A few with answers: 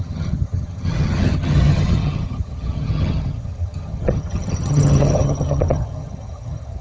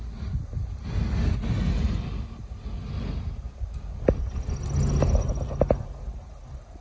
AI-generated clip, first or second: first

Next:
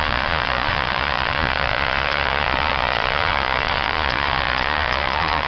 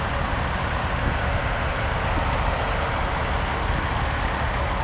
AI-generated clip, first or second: first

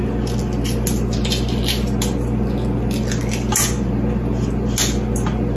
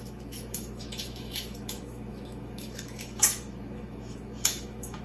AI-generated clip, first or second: second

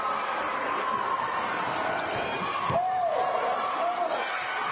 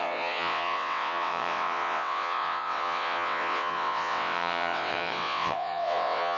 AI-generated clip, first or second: second